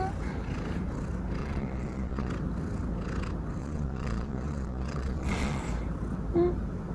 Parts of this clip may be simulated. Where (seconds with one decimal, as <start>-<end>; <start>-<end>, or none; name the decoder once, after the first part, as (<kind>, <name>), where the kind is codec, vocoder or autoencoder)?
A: 1.4-2.3 (vocoder, Vocos); 3.6-5.6